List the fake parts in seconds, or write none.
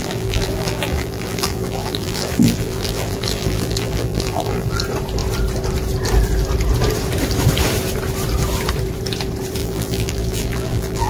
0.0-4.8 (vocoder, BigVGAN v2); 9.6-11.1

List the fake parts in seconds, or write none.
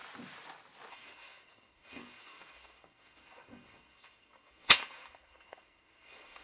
0.9-6.4 (codec, SNAC)